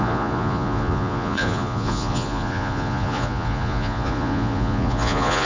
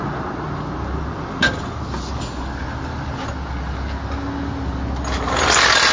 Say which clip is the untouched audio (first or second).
second